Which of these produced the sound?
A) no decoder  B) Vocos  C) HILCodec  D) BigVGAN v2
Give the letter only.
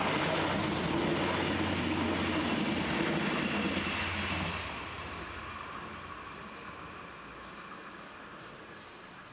A